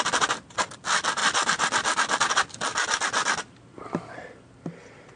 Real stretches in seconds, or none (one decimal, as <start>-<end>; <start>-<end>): 0.0-5.2